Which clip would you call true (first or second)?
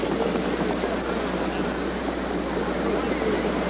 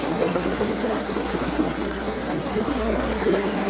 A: first